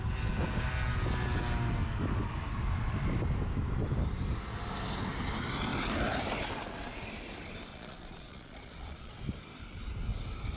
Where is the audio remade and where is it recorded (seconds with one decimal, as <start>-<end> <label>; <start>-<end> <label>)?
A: 0.0-7.7 recorded; 7.7-9.1 remade; 9.1-10.6 recorded